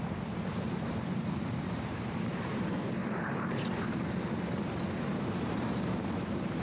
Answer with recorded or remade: remade